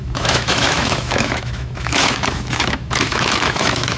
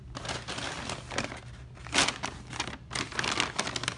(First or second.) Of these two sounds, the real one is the second